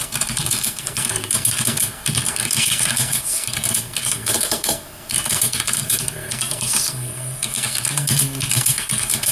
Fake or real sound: fake